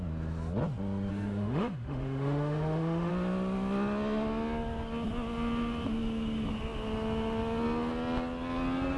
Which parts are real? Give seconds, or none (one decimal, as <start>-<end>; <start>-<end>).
0.0-1.1; 3.1-9.0